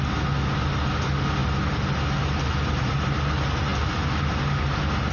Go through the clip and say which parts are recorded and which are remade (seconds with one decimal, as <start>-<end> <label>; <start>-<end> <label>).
0.0-5.1 recorded